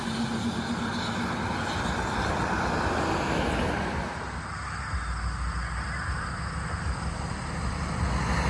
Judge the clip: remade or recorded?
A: recorded